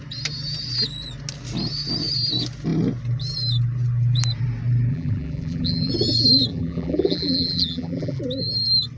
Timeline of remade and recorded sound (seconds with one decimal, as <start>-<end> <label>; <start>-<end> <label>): 0.0-4.9 recorded; 4.9-5.9 remade; 5.9-6.5 recorded; 6.5-8.2 remade; 8.2-9.0 recorded